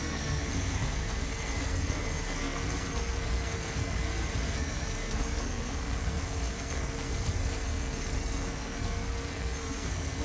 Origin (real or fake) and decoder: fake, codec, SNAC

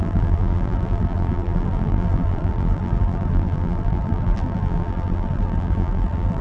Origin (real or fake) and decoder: fake, vocoder, BigVGAN v2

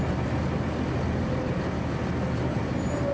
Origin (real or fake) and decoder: real